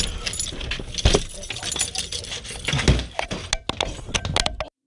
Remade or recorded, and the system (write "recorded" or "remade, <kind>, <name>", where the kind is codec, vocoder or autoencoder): recorded